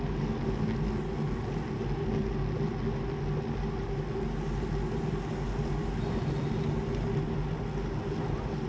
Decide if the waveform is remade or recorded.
recorded